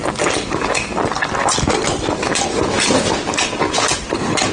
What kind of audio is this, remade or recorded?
recorded